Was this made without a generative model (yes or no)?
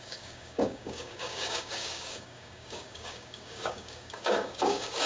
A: no